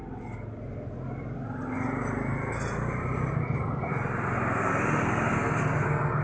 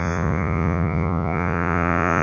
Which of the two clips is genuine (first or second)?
first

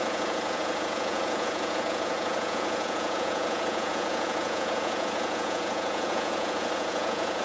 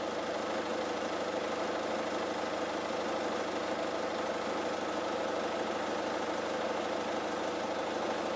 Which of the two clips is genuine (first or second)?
second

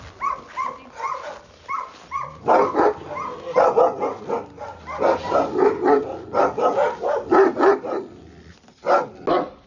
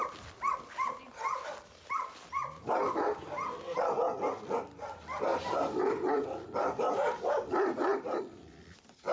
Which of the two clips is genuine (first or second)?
first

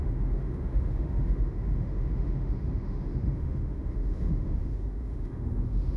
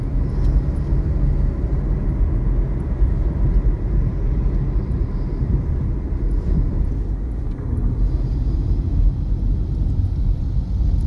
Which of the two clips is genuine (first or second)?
second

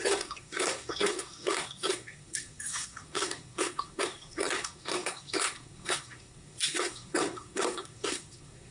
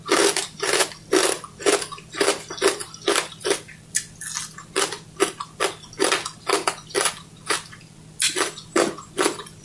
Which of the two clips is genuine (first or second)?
second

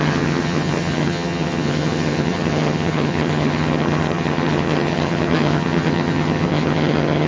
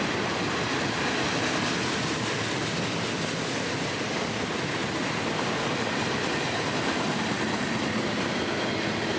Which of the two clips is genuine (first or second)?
second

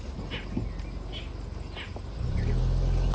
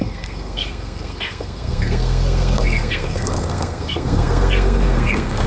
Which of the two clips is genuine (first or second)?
first